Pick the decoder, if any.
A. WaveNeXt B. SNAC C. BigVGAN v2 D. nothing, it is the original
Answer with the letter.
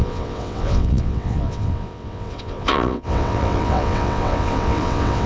A